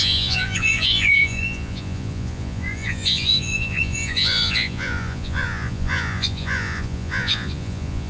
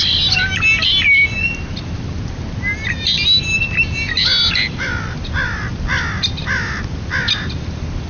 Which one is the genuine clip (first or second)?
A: second